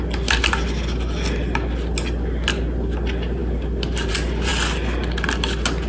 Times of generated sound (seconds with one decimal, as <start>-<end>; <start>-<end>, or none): none